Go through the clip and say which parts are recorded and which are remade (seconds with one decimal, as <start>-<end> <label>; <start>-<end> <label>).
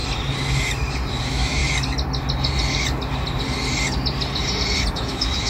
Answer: 0.0-1.2 recorded; 1.2-1.6 remade; 1.6-4.9 recorded; 4.9-5.5 remade